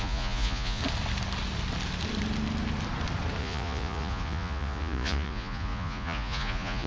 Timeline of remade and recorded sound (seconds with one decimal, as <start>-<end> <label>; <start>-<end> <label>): 0.0-0.8 remade; 0.8-3.4 recorded; 3.4-6.9 remade